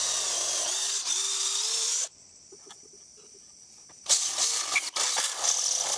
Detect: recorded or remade recorded